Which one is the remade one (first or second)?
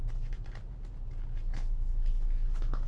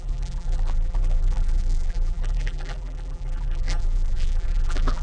second